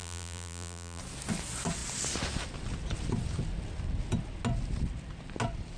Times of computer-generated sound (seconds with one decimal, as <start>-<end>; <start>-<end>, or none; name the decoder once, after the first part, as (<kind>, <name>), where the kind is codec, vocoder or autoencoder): 0.0-1.0 (vocoder, BigVGAN v2)